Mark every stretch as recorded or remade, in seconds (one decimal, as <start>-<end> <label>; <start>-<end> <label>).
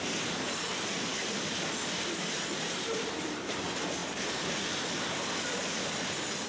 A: 0.0-6.5 remade